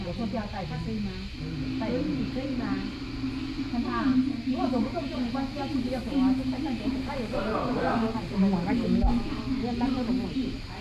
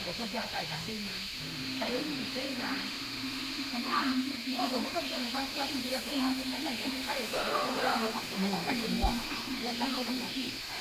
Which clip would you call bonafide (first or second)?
first